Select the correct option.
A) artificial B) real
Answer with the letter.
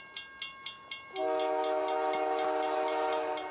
B